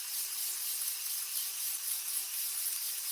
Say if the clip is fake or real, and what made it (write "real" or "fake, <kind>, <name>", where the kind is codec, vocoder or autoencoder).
real